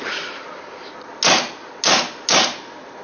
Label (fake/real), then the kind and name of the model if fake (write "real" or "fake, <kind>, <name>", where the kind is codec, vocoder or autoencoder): real